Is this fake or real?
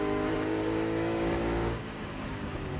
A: fake